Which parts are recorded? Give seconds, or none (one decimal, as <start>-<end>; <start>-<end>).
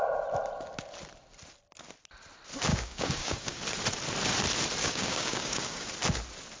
0.0-2.7; 3.6-4.8; 5.9-6.6